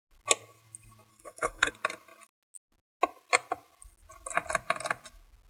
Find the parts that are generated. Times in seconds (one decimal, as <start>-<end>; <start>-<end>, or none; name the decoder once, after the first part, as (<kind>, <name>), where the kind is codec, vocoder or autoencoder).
1.1-1.7 (codec, SNAC)